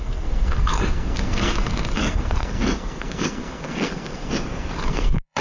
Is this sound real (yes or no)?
no